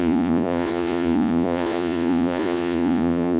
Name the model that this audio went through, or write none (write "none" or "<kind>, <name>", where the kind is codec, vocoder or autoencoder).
vocoder, Vocos